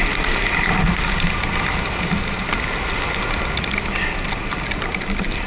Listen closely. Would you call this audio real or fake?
real